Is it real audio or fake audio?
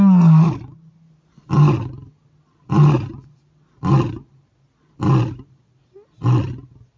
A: real